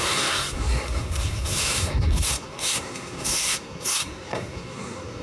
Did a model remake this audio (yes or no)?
yes